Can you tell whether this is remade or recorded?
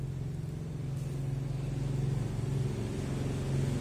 recorded